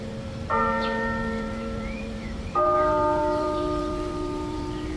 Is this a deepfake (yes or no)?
yes